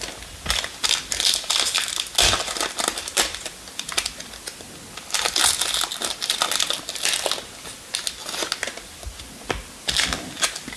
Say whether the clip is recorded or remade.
recorded